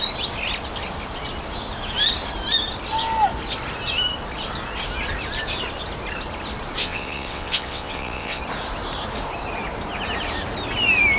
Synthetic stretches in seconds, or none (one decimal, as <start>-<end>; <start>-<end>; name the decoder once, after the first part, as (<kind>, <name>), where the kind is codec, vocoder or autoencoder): 6.8-8.4 (vocoder, WaveNeXt)